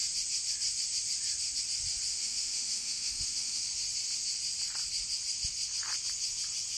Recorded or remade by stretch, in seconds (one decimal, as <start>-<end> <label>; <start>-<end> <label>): 0.0-2.1 recorded; 2.1-3.6 remade; 3.6-6.8 recorded